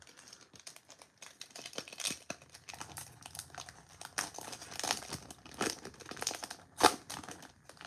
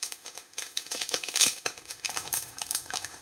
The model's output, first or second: second